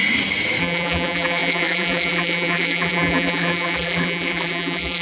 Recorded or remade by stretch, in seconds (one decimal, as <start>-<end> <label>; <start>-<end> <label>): 0.0-0.6 recorded; 0.6-5.0 remade

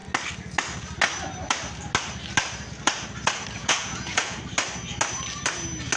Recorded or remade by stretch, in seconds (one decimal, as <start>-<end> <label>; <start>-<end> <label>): 0.0-3.6 recorded; 3.6-4.4 remade; 4.4-6.0 recorded

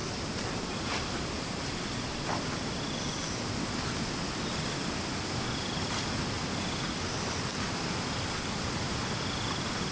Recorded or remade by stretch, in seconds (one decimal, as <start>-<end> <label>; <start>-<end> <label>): 0.0-9.9 recorded

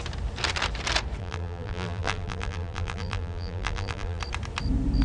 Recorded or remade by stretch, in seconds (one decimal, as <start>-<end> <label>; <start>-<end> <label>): 0.0-1.2 recorded; 1.2-4.2 remade; 4.2-5.0 recorded

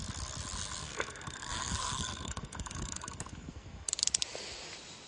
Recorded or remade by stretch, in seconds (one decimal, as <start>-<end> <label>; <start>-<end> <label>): 0.0-0.8 recorded; 0.8-3.9 remade; 3.9-5.1 recorded

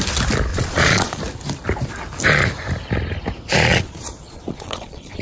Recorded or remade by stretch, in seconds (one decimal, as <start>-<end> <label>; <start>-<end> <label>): 0.0-0.5 recorded; 0.5-1.2 remade; 1.2-3.7 recorded; 3.7-5.2 remade